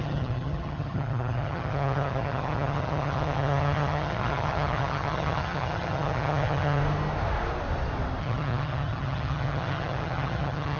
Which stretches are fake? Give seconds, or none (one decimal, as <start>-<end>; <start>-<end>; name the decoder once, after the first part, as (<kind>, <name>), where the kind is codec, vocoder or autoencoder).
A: 0.0-6.8 (vocoder, HiFi-GAN); 8.2-10.8